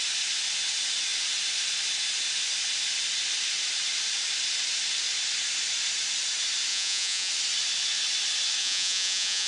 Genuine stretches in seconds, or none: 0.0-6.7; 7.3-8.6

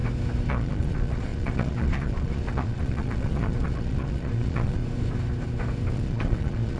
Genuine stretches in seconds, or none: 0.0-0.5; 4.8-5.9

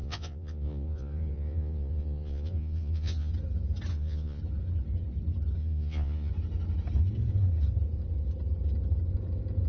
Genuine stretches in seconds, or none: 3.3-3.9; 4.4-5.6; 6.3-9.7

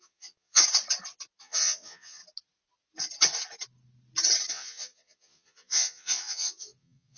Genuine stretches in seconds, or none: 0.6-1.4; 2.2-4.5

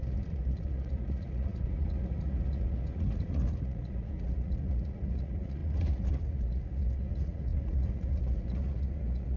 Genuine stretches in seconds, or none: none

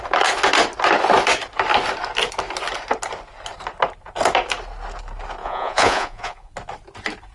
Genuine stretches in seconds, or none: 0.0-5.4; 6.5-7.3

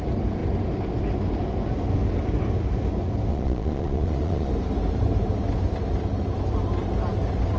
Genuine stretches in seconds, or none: 0.0-3.3; 4.5-7.6

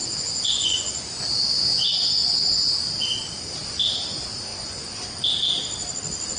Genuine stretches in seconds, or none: 1.2-4.5; 5.1-6.4